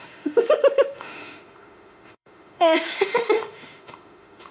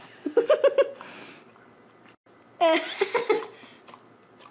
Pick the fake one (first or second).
first